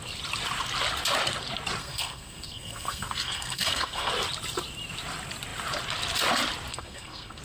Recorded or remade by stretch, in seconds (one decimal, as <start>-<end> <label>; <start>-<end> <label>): 0.0-1.8 recorded; 1.8-4.1 remade; 4.1-6.7 recorded; 6.7-7.4 remade